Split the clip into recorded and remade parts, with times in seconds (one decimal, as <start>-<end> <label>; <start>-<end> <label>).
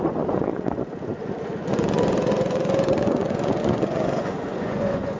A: 0.0-5.2 remade